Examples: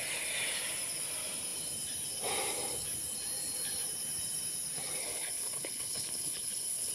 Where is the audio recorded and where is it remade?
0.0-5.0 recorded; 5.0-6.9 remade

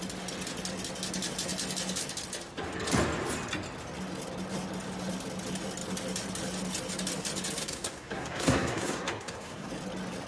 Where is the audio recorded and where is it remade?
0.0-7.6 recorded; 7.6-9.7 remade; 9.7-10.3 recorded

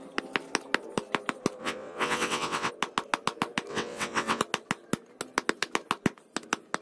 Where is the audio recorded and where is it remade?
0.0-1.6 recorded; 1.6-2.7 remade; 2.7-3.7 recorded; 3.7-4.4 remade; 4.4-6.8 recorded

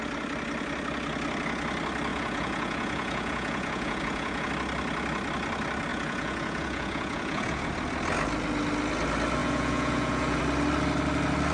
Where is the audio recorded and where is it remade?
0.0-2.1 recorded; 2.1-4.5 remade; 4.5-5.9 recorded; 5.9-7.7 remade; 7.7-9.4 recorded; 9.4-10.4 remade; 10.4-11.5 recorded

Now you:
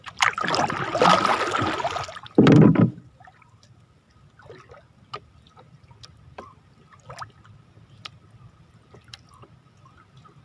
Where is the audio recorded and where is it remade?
0.0-10.4 recorded

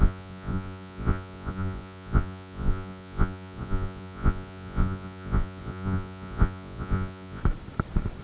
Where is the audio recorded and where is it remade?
0.0-7.4 remade; 7.4-8.2 recorded

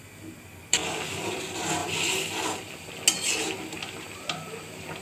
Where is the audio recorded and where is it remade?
0.0-5.0 recorded

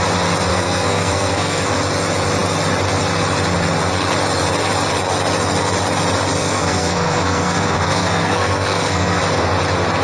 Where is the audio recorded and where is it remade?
0.0-0.5 recorded; 0.5-1.7 remade; 1.7-6.4 recorded; 6.4-9.2 remade; 9.2-10.0 recorded